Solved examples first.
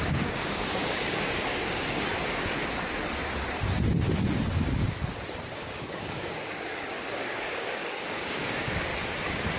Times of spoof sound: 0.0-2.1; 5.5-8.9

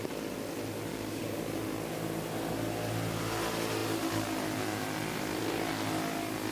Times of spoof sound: 0.9-1.4

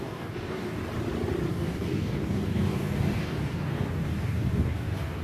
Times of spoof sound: 0.0-0.8; 1.5-5.2